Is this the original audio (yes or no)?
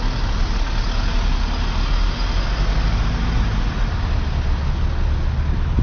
yes